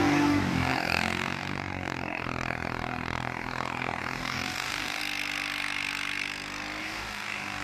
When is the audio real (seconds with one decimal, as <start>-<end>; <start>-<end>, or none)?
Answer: 5.0-6.8